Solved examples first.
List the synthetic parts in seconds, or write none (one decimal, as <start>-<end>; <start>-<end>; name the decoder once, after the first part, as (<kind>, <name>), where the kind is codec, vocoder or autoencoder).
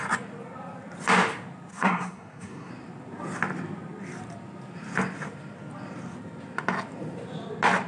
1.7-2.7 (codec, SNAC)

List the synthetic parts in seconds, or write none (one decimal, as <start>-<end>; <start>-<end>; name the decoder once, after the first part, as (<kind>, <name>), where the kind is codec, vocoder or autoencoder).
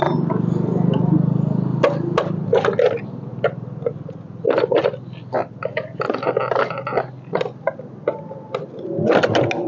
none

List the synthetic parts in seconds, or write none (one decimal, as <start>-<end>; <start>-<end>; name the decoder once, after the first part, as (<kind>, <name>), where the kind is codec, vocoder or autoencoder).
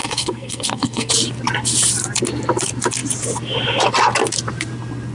0.0-1.1 (codec, SNAC)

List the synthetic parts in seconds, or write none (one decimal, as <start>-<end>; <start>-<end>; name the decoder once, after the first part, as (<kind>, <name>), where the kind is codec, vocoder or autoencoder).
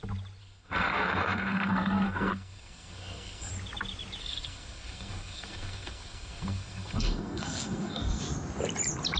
0.4-3.5 (codec, SNAC); 4.2-8.2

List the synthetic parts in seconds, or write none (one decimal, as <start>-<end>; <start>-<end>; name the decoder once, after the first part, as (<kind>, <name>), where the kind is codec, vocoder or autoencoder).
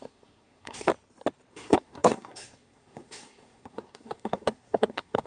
0.0-0.9 (codec, SNAC); 1.5-5.3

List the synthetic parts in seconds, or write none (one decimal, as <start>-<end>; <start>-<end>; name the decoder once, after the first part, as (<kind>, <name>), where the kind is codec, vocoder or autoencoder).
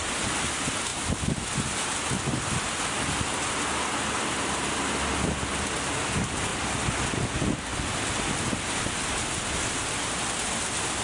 none